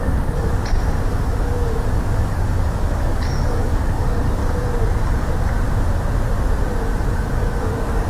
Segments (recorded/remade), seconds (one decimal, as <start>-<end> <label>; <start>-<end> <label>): 0.0-0.6 remade; 0.6-1.1 recorded; 1.1-4.4 remade; 4.4-7.1 recorded; 7.1-8.1 remade